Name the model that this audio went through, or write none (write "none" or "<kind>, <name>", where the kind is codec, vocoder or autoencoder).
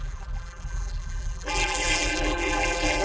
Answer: vocoder, BigVGAN v2